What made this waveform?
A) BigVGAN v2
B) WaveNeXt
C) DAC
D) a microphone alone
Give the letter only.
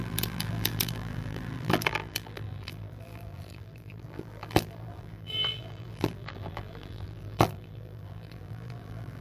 A